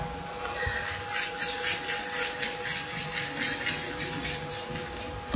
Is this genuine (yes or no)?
yes